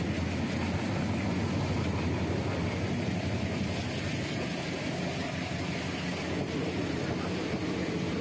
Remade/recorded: recorded